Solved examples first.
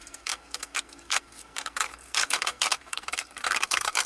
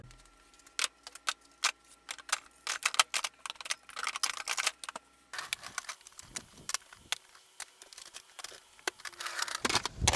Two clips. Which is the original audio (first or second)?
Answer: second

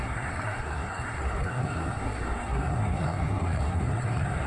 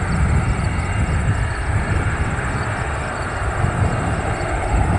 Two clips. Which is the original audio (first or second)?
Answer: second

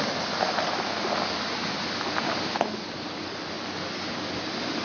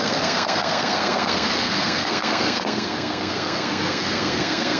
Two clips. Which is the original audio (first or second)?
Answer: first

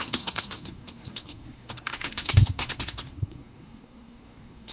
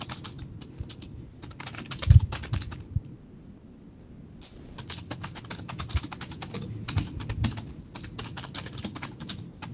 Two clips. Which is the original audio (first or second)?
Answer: second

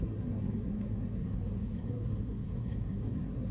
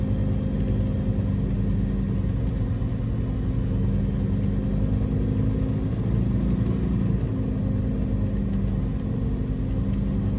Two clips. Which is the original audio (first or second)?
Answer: second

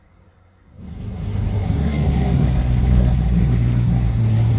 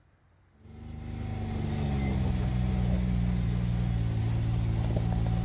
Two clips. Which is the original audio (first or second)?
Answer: second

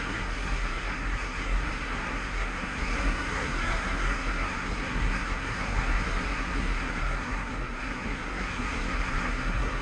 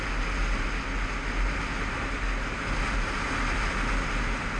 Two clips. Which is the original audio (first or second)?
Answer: second